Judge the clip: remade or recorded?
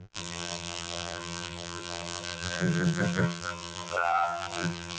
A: remade